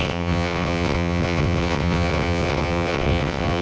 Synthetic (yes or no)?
yes